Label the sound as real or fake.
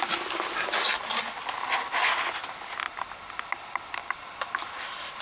real